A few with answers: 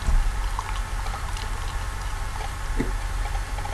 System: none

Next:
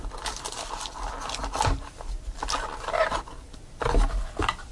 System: none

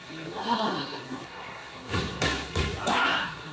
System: codec, SNAC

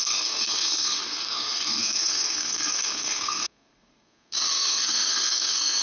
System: codec, SNAC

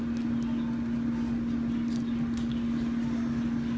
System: none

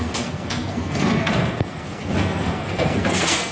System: codec, SNAC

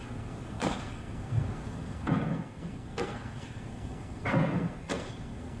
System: codec, SNAC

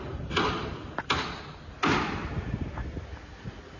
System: none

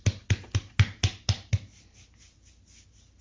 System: none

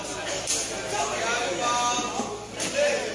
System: none